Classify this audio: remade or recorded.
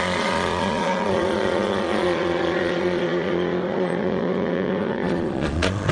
remade